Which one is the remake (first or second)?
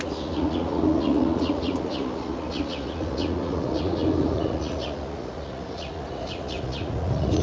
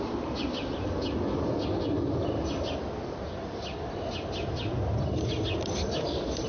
first